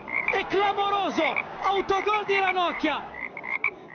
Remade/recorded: remade